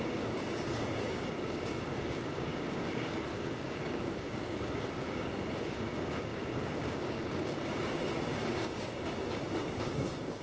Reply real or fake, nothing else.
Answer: fake